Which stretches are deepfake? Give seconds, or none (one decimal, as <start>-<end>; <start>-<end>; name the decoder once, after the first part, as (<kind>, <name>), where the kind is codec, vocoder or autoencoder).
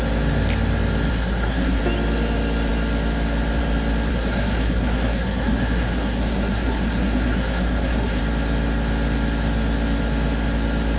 1.1-1.8 (codec, SNAC); 4.1-8.2